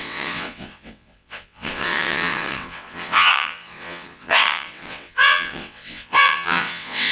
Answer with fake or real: fake